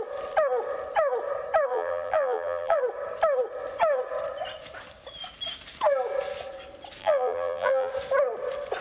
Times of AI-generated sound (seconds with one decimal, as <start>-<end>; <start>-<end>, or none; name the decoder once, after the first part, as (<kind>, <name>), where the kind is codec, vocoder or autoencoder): 1.7-2.8 (vocoder, BigVGAN v2); 7.0-7.9